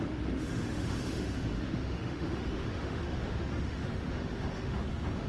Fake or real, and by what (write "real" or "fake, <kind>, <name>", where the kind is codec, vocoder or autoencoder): fake, autoencoder, DAC-VAE